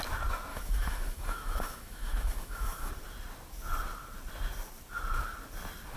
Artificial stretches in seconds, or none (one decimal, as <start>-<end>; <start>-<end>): 0.5-2.9